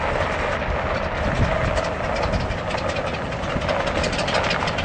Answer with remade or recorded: recorded